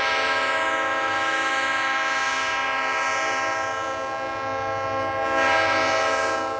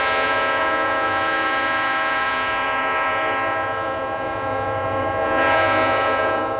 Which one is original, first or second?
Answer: first